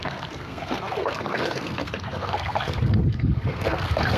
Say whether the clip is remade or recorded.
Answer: remade